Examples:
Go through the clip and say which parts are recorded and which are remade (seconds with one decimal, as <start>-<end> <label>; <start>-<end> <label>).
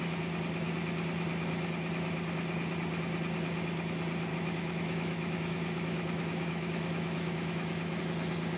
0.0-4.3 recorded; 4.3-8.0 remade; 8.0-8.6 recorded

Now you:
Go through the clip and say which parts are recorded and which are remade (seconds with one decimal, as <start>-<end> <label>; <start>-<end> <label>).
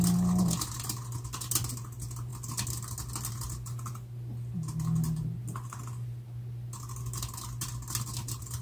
0.0-8.6 recorded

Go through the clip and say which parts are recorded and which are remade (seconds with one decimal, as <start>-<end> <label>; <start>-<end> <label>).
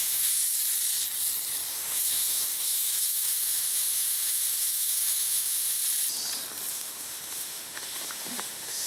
0.0-0.4 remade; 0.4-1.7 recorded; 1.7-5.8 remade; 5.8-6.7 recorded; 6.7-8.9 remade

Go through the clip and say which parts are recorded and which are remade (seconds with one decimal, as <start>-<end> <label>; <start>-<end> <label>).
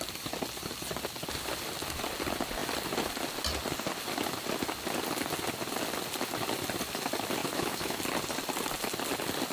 0.0-7.4 recorded; 7.4-8.0 remade; 8.0-9.5 recorded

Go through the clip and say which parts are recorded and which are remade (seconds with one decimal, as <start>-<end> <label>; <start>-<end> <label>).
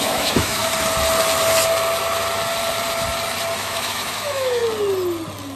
0.0-0.6 remade; 0.6-3.6 recorded; 3.6-4.6 remade; 4.6-5.6 recorded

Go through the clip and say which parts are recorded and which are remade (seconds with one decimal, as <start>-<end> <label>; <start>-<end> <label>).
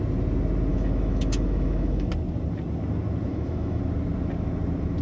0.0-0.7 recorded; 0.7-2.1 remade; 2.1-3.3 recorded; 3.3-3.8 remade; 3.8-5.0 recorded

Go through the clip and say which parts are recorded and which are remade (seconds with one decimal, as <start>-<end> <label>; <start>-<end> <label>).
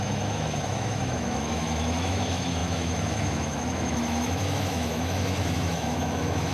0.0-6.5 remade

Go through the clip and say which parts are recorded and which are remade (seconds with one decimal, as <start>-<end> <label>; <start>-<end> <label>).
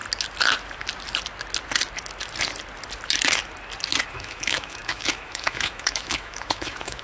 0.0-4.1 recorded; 4.1-7.0 remade